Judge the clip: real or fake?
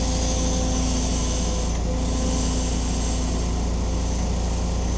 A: real